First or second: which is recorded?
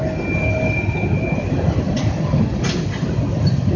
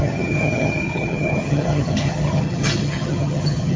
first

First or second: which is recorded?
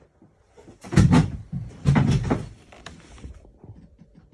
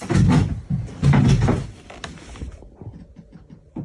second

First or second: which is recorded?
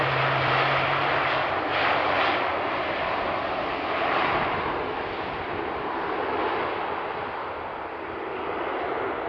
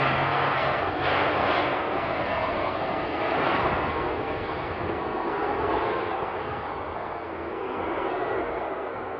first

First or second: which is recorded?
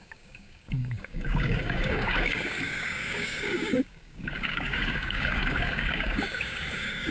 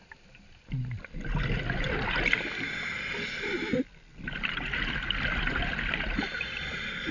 second